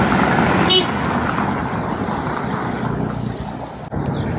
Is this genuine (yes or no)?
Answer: yes